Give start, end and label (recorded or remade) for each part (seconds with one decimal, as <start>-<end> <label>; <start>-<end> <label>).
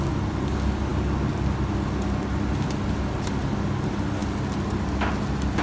0.0-5.6 recorded